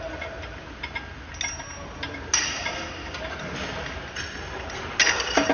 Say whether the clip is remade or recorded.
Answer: recorded